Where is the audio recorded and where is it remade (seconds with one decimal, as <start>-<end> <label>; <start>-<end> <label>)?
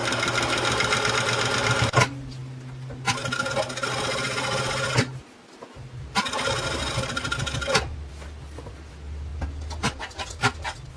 0.0-11.0 recorded